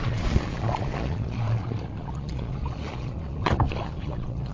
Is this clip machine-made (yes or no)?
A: yes